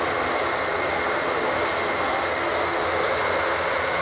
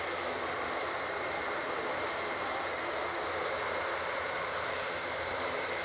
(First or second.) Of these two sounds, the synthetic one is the second